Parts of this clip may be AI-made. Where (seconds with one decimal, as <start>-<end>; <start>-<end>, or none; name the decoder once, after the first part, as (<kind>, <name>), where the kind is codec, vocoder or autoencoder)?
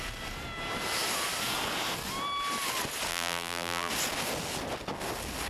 3.1-3.9 (vocoder, BigVGAN v2)